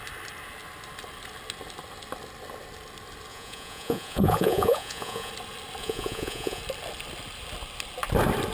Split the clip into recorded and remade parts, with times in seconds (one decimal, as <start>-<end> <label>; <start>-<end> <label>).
0.0-3.3 recorded; 3.3-5.3 remade; 5.3-5.8 recorded; 5.8-6.6 remade; 6.6-8.5 recorded